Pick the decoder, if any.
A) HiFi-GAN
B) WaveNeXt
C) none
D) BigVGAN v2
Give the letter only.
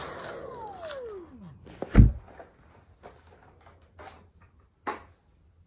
C